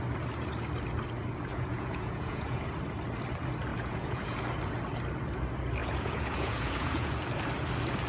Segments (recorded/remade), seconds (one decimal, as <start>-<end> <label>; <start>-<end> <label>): 0.0-1.5 recorded; 1.5-2.6 remade; 2.6-3.7 recorded; 3.7-4.4 remade; 4.4-5.8 recorded; 5.8-7.1 remade; 7.1-8.1 recorded